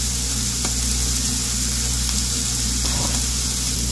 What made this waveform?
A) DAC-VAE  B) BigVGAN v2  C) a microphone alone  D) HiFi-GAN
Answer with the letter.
C